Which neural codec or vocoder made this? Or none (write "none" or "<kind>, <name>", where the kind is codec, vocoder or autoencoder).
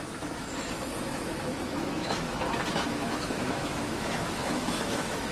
autoencoder, DAC-VAE